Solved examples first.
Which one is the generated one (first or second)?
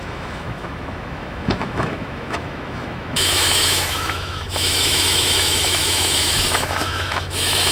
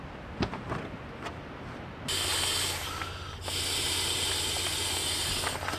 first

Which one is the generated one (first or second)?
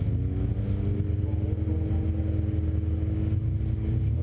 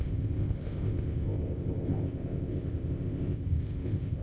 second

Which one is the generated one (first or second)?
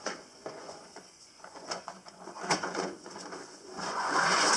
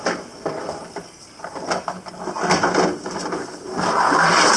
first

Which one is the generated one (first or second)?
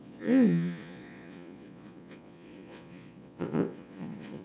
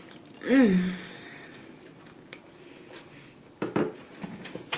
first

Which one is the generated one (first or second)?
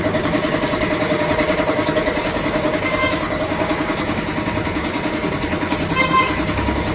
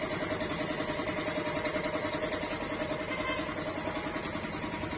first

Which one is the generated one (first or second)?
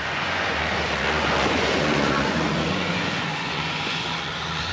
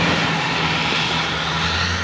first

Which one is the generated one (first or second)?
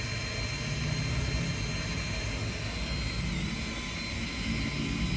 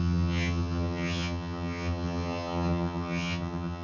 second